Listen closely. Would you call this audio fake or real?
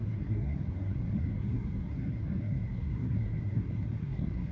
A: fake